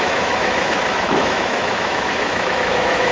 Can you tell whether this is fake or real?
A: fake